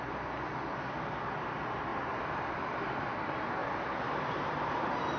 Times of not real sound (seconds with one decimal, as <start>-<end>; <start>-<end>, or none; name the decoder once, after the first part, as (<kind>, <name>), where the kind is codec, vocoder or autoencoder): 1.9-3.2 (vocoder, BigVGAN v2); 3.6-5.2